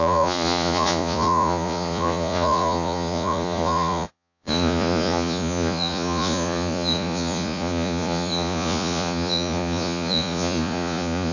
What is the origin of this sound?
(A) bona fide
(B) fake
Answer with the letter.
B